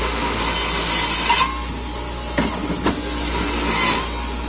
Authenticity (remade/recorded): recorded